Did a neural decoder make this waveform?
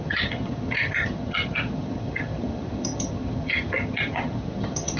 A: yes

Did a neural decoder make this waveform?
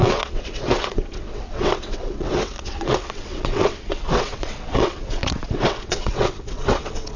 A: yes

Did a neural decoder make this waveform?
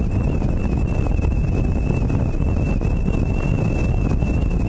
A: no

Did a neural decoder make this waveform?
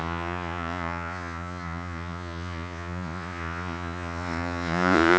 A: yes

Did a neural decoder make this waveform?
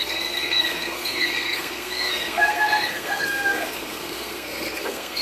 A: yes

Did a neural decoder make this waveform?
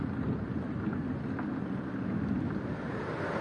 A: no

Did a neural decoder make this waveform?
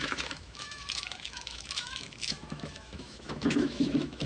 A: yes